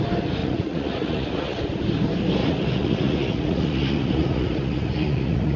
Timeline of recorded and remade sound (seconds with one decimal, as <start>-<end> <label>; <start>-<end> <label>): 0.0-0.4 recorded; 0.4-1.6 remade; 1.6-2.4 recorded; 2.4-5.6 remade